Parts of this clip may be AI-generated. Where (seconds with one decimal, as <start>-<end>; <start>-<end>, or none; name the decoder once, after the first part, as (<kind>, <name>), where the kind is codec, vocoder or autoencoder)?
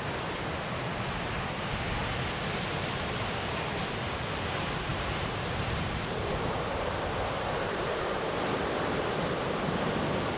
4.9-9.1 (vocoder, BigVGAN v2)